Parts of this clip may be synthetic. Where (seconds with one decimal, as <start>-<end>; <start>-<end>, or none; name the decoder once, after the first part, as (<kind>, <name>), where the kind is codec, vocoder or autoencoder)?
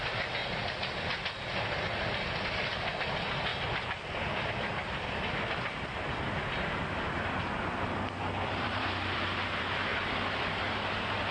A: 0.0-0.4 (vocoder, BigVGAN v2); 3.0-11.3